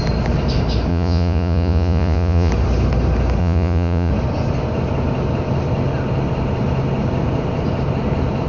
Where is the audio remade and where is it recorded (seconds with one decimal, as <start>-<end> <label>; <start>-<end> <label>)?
0.0-0.9 recorded; 0.9-2.5 remade; 2.5-3.4 recorded; 3.4-4.1 remade; 4.1-8.5 recorded